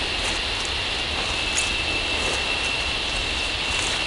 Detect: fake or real real